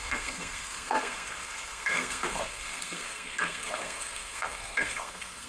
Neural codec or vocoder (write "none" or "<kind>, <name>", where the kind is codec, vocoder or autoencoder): codec, SNAC